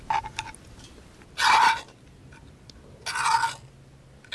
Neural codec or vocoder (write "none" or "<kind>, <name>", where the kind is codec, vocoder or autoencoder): none